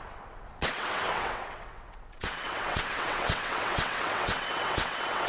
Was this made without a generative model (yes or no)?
no